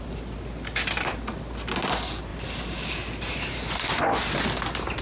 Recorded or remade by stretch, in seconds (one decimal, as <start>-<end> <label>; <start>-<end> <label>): 0.0-5.0 recorded